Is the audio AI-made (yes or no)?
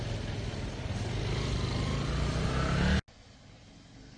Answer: no